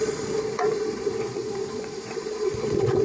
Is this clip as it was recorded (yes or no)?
no